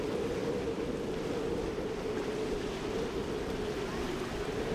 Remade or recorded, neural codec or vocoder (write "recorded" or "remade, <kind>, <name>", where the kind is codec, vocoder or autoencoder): recorded